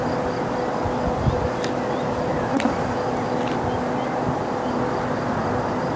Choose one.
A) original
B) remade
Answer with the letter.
A